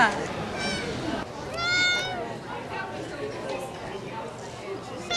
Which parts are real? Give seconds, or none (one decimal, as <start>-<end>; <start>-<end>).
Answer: 0.0-5.2